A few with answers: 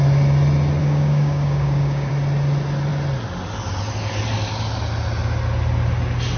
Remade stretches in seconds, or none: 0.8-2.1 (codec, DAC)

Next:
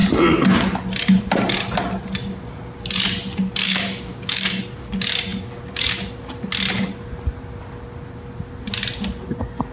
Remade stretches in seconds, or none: 3.6-4.6 (codec, DAC)

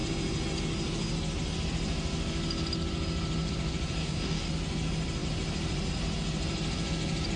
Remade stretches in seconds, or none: 4.0-4.5 (codec, DAC)

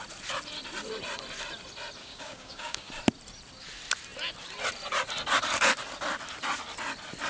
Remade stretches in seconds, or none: 2.0-2.9 (codec, DAC)

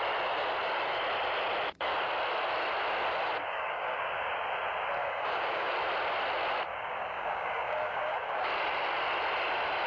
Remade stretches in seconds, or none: 3.4-4.3 (codec, DAC); 5.0-5.7; 6.7-8.5

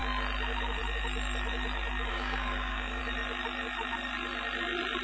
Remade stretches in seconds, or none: 2.1-3.0 (codec, DAC)